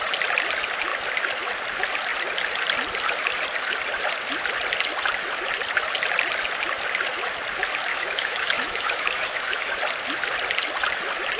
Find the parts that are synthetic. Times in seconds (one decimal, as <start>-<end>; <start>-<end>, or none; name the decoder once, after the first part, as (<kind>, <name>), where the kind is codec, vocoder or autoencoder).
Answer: 7.9-9.7 (autoencoder, DAC-VAE)